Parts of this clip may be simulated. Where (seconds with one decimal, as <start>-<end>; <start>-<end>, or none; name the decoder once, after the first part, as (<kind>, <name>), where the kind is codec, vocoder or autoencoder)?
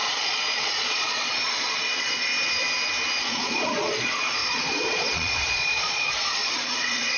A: 0.0-2.3 (vocoder, Vocos); 3.2-7.2